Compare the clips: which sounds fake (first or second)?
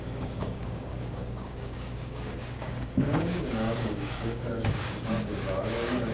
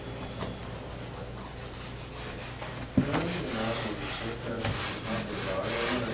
first